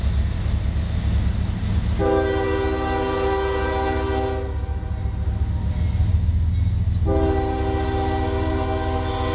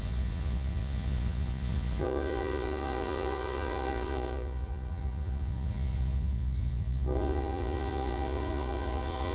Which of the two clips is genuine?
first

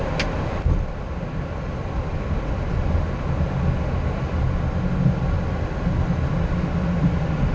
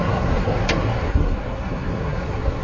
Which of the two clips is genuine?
first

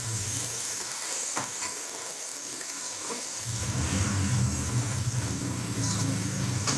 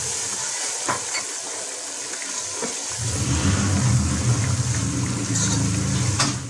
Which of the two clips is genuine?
second